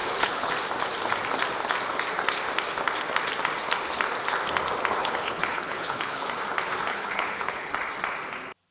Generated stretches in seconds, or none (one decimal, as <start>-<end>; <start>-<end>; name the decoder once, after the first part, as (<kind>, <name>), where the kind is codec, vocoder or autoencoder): 0.0-0.5 (codec, HILCodec); 5.0-6.3; 6.9-7.7